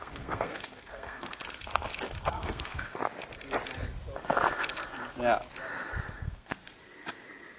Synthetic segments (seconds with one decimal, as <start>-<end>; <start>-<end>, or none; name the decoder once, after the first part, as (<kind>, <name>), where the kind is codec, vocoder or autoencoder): 0.0-1.4 (codec, SNAC); 2.3-3.0; 6.1-6.6